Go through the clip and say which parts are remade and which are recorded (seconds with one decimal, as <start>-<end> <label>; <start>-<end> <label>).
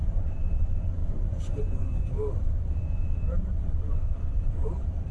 0.0-5.1 remade